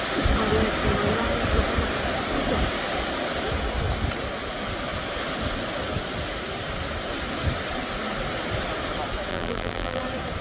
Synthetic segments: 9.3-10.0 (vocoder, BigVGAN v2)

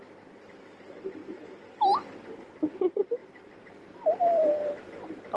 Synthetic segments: 0.0-1.2 (vocoder, BigVGAN v2); 2.7-4.6

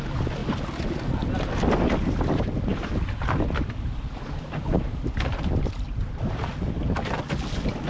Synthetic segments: 2.7-7.2 (vocoder, BigVGAN v2)

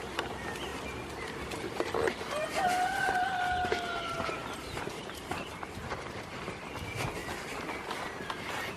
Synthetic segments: none

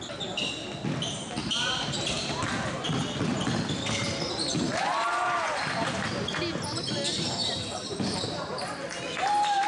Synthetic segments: 1.4-2.9 (vocoder, BigVGAN v2); 4.0-6.3; 7.4-8.2

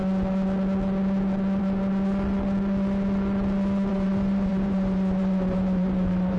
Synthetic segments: 3.9-6.4 (vocoder, BigVGAN v2)

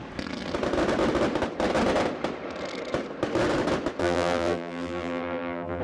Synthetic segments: 4.0-5.8 (vocoder, BigVGAN v2)